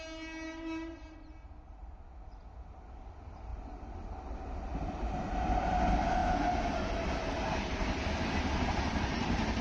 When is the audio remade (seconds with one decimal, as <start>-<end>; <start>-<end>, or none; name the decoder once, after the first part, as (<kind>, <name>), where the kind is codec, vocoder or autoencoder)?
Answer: none